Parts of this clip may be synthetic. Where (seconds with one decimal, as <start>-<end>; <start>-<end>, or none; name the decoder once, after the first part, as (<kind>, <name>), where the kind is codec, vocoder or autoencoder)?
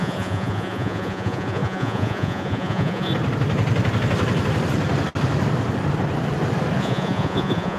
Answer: 0.0-3.1 (vocoder, Vocos); 6.8-7.8